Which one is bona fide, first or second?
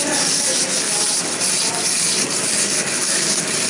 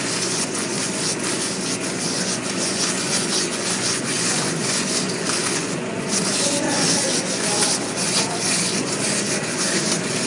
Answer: first